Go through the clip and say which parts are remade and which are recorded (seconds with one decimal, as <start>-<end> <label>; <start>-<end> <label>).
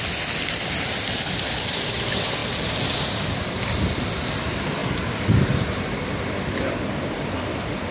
0.0-2.4 remade; 2.4-3.5 recorded; 3.5-7.9 remade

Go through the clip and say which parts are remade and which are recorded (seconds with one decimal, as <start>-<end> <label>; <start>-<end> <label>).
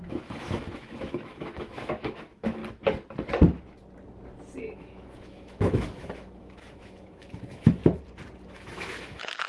0.0-2.6 remade; 2.6-4.6 recorded; 4.6-7.8 remade; 7.8-8.5 recorded; 8.5-9.5 remade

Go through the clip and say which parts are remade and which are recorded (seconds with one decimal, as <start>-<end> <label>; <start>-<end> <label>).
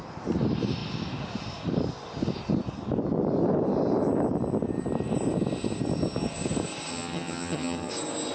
0.0-6.9 recorded; 6.9-7.9 remade; 7.9-8.3 recorded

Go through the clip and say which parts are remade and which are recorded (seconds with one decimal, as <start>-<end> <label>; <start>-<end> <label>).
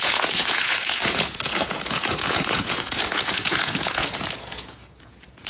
0.0-5.5 remade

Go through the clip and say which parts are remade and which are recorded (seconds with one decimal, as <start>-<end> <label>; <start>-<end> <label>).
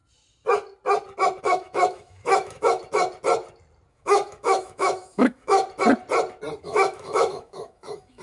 0.0-1.4 recorded; 1.4-2.8 remade; 2.8-3.9 recorded; 3.9-5.6 remade; 5.6-6.6 recorded; 6.6-8.2 remade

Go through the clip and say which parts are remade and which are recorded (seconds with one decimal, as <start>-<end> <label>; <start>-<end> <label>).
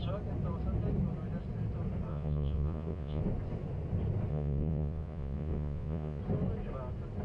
0.0-2.1 recorded; 2.1-3.2 remade; 3.2-4.3 recorded; 4.3-6.2 remade; 6.2-7.2 recorded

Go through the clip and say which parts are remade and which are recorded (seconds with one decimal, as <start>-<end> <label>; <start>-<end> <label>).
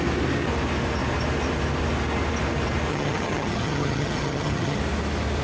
0.0-2.9 recorded; 2.9-4.8 remade; 4.8-5.4 recorded